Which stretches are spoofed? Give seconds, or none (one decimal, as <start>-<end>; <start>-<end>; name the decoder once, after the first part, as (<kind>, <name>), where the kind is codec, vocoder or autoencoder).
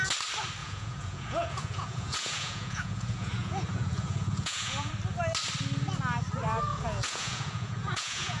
0.6-4.9 (vocoder, Vocos); 6.7-8.4